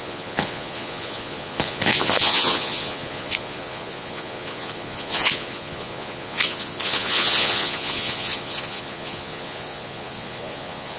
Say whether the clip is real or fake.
fake